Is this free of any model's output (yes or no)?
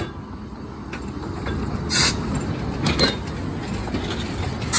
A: yes